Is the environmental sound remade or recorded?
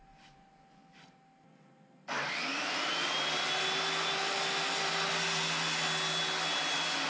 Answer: recorded